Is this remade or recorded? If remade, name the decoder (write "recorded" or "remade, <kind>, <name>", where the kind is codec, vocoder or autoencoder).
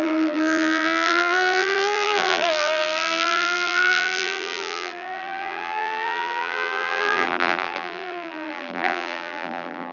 remade, vocoder, BigVGAN v2